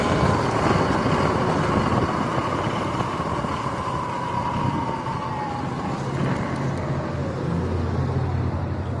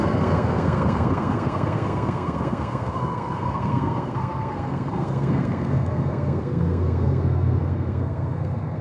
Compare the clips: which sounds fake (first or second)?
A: second